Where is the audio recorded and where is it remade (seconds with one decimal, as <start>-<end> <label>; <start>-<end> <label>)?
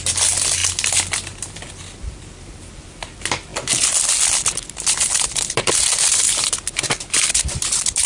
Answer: 0.0-8.1 remade